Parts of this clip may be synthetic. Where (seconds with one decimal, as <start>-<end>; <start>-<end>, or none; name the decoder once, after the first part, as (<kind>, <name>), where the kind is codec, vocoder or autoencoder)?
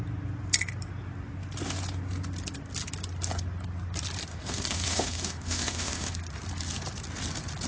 4.3-6.1 (autoencoder, DAC-VAE)